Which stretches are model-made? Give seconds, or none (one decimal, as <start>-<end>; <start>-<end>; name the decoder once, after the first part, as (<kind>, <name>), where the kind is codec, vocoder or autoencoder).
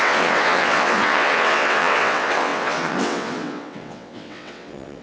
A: 0.0-5.0 (vocoder, WaveNeXt)